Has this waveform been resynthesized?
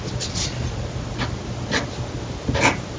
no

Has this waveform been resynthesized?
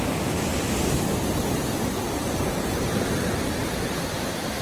no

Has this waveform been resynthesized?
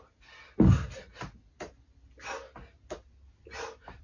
no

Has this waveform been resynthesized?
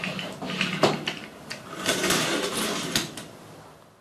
no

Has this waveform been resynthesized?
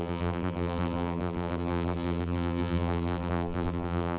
yes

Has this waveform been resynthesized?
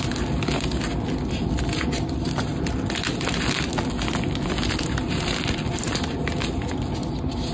no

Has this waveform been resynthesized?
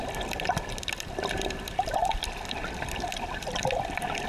yes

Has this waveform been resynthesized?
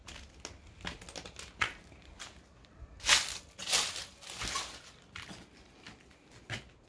no